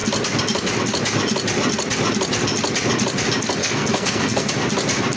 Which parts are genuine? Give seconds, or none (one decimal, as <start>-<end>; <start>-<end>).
0.0-3.6; 4.5-5.2